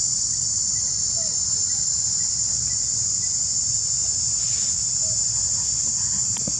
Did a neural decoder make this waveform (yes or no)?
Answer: no